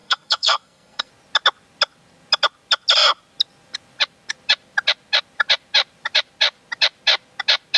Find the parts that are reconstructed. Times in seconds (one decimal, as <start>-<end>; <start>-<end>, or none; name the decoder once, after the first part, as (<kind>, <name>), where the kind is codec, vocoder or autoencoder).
0.0-1.1 (codec, SNAC)